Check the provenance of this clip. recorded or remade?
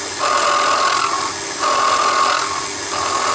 recorded